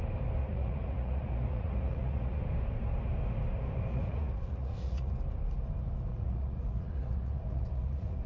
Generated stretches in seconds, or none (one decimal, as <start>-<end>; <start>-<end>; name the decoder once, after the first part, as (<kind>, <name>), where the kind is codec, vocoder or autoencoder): 0.4-2.4 (vocoder, Vocos); 3.9-5.1; 6.1-8.3